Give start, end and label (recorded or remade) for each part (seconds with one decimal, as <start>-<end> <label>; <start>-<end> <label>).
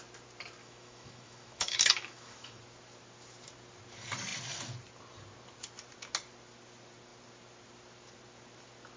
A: 0.0-0.6 recorded; 0.6-2.6 remade; 2.6-9.0 recorded